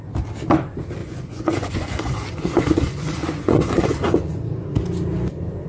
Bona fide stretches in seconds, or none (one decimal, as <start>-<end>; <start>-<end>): 0.0-1.0; 4.4-5.7